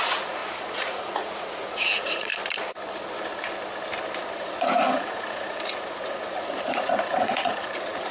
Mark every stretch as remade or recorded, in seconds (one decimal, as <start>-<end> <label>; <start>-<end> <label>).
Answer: 0.0-2.3 remade; 2.3-4.3 recorded; 4.3-8.1 remade